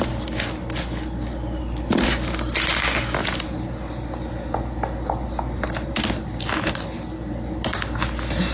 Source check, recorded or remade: recorded